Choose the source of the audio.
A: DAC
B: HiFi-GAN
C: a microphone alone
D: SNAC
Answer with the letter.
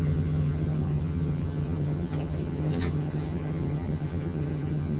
B